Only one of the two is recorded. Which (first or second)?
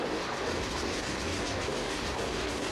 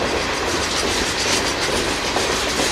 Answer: second